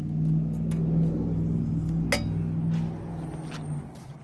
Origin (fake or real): real